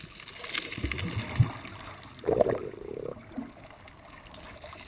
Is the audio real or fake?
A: real